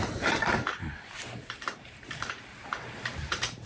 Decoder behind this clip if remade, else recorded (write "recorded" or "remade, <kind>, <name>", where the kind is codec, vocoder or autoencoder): remade, vocoder, BigVGAN v2